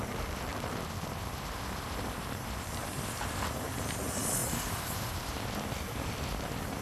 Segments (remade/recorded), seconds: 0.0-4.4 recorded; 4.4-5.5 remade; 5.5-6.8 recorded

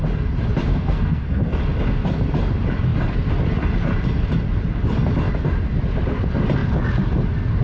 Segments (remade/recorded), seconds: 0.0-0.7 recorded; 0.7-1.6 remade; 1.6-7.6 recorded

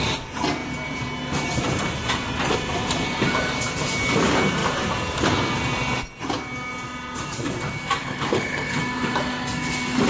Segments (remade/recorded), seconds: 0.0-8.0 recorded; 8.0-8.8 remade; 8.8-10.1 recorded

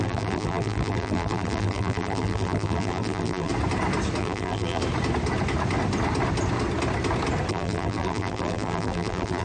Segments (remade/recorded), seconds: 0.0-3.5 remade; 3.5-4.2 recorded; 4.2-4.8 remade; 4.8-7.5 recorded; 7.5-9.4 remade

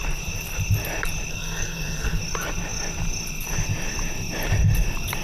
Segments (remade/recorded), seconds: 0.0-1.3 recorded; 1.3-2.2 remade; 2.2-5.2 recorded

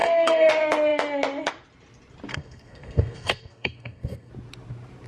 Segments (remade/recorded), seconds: 0.0-0.5 remade; 0.5-2.3 recorded; 2.3-4.3 remade; 4.3-5.1 recorded